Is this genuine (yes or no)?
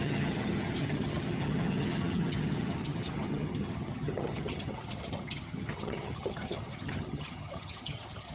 no